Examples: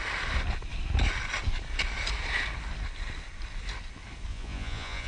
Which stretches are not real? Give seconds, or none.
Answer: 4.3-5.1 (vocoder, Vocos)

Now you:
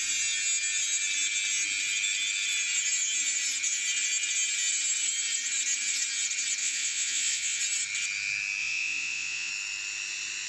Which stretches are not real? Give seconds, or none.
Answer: 6.6-7.6 (vocoder, Vocos); 8.6-9.5

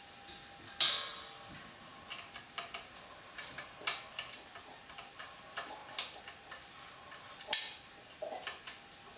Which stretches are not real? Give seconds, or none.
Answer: none

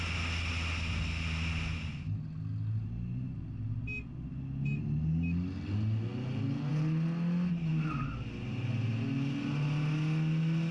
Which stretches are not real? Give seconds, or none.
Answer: none

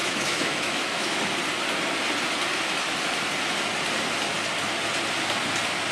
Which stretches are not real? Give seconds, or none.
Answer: 0.0-1.2 (autoencoder, DAC-VAE)

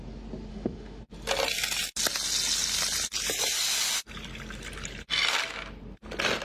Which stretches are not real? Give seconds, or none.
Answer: 0.5-1.0 (autoencoder, DAC-VAE)